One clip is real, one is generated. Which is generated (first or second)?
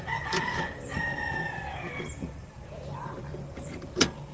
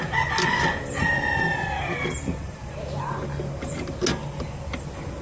first